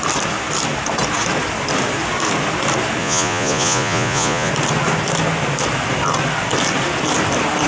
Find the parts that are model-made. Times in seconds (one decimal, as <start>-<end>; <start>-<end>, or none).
3.0-4.5